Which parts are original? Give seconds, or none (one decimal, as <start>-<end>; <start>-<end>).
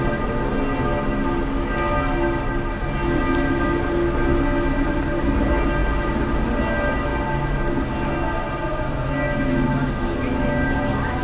0.0-11.2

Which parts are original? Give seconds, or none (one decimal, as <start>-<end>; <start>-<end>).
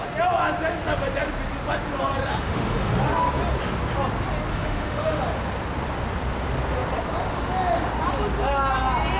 0.0-2.3; 2.9-4.5; 5.2-9.2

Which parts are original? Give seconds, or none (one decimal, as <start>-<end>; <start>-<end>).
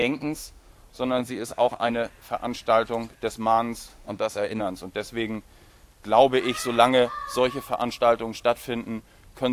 0.7-1.2; 1.9-3.9; 4.6-9.5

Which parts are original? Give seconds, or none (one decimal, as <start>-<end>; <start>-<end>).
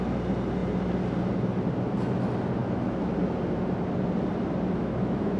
0.0-2.6; 3.1-4.8